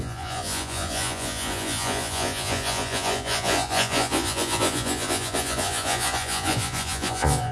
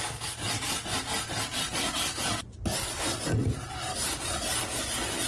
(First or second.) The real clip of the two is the second